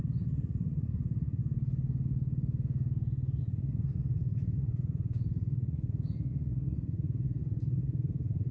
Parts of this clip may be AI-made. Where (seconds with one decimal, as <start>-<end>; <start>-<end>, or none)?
0.0-1.4; 3.4-8.5